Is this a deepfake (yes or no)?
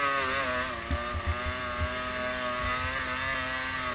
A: no